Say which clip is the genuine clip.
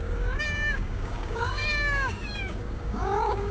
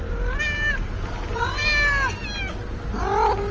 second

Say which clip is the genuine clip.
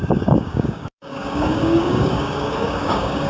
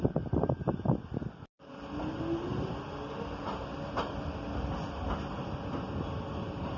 second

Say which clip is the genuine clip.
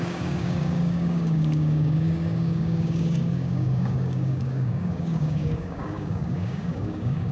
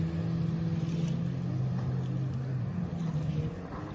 second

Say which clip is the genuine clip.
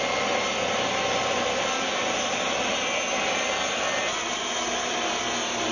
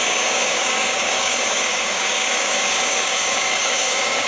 first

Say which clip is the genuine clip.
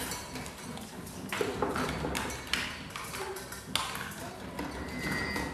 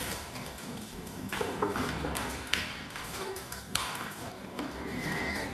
first